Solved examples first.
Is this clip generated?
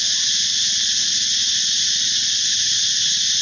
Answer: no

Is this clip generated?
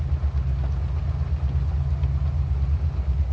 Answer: no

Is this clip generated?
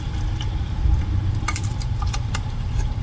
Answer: yes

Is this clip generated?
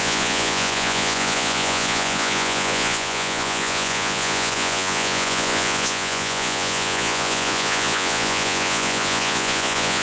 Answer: yes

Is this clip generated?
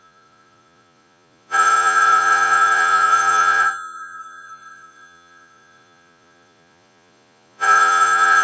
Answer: yes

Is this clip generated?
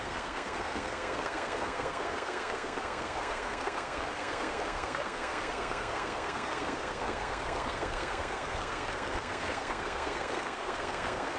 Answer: yes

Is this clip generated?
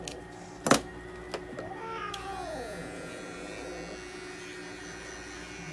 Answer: no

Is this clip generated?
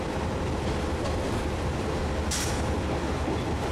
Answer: yes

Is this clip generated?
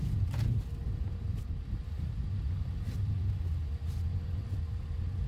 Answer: no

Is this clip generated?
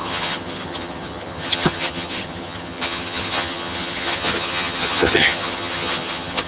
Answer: yes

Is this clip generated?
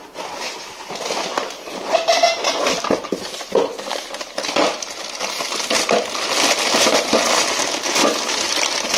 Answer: no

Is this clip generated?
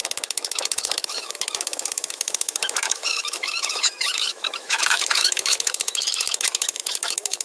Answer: yes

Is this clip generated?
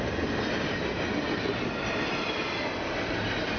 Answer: no